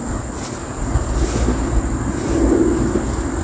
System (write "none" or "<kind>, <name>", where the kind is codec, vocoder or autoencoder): none